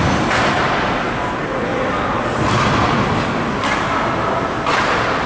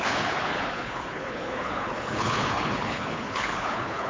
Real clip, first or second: first